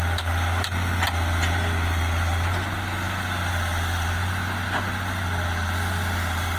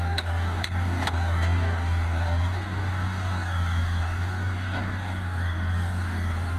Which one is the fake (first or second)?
second